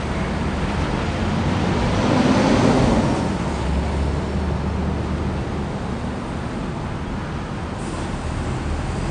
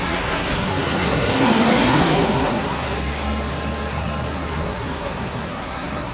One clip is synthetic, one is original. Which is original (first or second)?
first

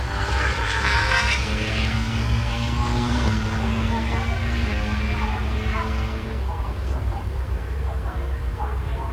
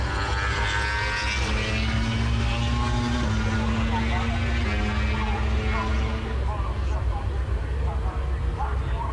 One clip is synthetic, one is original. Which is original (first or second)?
second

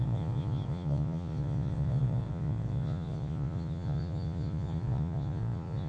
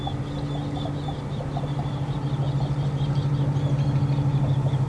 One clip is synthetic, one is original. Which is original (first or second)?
second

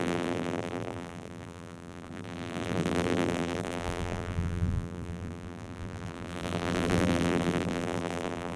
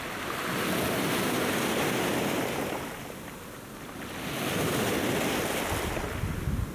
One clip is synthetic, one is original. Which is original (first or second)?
second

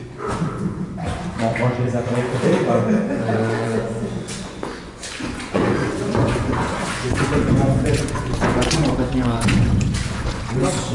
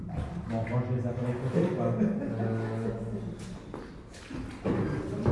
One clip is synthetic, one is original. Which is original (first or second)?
second